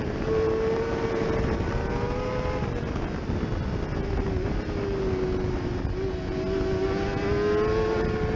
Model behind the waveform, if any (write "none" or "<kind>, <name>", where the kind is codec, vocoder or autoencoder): none